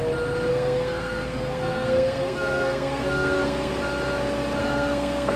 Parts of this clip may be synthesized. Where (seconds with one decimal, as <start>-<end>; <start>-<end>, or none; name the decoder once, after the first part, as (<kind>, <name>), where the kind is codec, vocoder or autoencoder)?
0.5-3.7 (codec, SNAC); 4.6-5.4